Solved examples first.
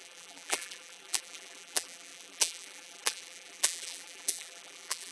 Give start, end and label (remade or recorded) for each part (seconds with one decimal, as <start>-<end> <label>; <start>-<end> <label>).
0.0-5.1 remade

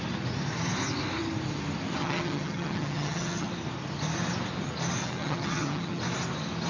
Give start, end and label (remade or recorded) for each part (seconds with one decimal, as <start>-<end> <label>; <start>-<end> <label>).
0.0-2.0 recorded; 2.0-3.5 remade; 3.5-5.0 recorded; 5.0-6.0 remade; 6.0-6.7 recorded

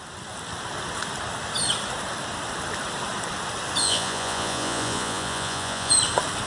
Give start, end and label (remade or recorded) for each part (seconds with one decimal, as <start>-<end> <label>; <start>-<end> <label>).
0.0-3.8 recorded; 3.8-5.9 remade; 5.9-6.5 recorded